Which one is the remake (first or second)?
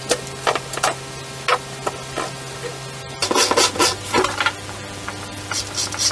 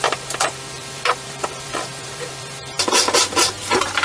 second